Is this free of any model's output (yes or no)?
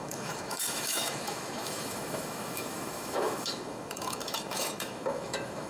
no